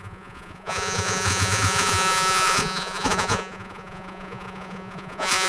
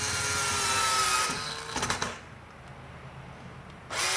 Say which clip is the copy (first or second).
first